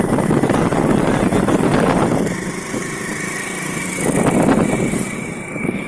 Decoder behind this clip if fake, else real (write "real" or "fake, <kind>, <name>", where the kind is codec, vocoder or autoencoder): real